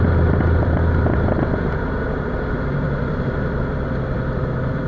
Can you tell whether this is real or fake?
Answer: fake